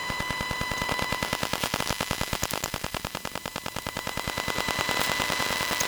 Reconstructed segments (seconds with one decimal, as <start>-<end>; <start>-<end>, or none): 0.0-1.8; 2.3-5.9